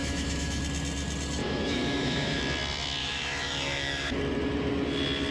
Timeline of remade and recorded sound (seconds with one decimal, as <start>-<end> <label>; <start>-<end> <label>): 0.0-0.6 remade; 0.6-1.4 recorded; 1.4-2.4 remade; 2.4-3.0 recorded; 3.0-4.2 remade; 4.2-5.3 recorded